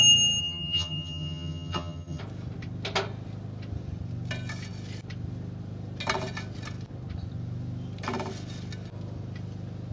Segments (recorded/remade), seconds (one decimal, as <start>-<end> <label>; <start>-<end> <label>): 0.0-0.4 recorded; 0.4-2.2 remade; 2.2-9.9 recorded